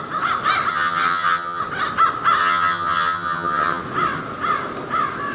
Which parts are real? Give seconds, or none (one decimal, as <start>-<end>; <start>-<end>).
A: 0.0-0.7; 1.6-2.4; 3.8-5.3